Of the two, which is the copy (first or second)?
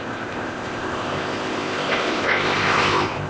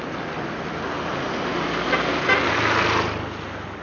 first